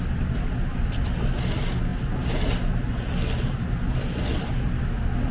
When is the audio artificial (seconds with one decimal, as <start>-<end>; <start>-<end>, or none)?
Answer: none